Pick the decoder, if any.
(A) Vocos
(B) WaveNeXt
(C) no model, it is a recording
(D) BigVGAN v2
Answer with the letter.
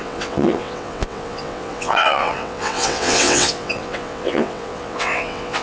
B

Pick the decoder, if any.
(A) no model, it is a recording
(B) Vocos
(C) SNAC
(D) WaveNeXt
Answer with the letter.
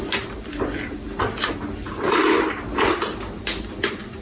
A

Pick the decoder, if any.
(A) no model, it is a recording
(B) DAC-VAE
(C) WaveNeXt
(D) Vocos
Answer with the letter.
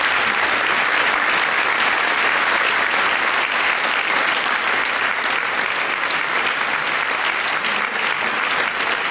A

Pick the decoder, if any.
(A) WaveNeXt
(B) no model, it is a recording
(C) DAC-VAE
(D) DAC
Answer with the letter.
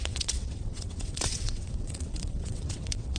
A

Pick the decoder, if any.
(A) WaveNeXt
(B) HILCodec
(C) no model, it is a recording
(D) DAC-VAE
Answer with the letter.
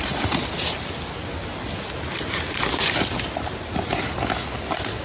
C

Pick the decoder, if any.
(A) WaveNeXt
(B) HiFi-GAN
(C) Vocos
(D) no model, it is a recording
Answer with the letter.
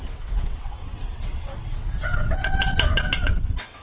A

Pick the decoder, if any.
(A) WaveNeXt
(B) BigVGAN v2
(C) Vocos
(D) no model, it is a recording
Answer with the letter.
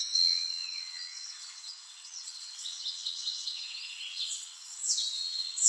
A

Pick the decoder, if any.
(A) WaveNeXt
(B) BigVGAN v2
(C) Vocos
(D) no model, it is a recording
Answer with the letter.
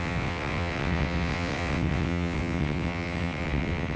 A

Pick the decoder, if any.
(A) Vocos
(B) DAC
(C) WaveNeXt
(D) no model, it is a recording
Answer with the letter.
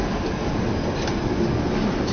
D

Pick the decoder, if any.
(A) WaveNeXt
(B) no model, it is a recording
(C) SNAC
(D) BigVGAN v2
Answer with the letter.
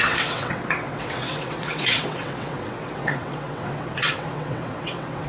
A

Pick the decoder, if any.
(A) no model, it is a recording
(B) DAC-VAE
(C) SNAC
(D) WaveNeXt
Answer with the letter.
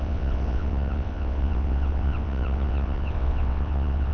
D